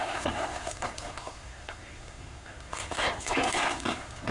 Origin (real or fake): fake